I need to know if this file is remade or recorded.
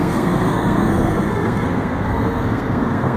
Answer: remade